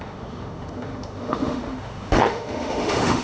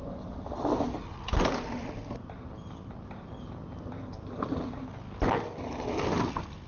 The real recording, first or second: second